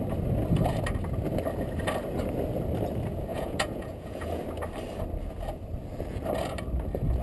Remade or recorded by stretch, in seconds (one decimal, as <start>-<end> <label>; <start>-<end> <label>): 0.0-3.3 recorded; 3.3-4.4 remade; 4.4-7.2 recorded